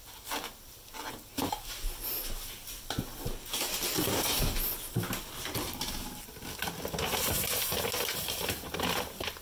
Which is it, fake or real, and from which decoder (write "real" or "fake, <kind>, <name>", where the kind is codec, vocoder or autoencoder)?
real